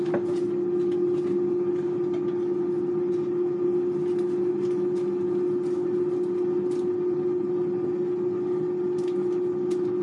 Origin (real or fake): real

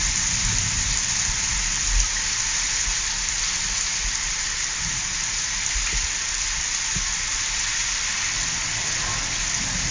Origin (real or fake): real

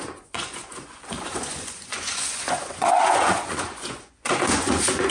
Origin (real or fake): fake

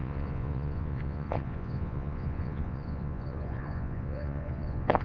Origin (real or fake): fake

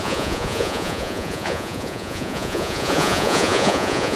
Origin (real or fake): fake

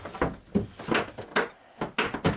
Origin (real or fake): real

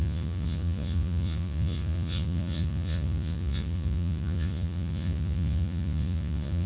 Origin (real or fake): fake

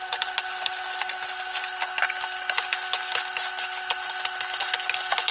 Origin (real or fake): real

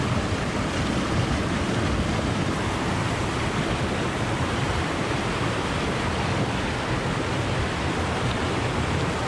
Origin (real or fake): real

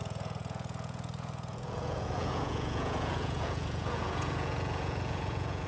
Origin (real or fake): fake